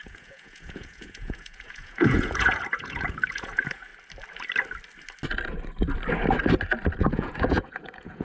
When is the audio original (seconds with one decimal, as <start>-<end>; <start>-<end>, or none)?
3.9-7.0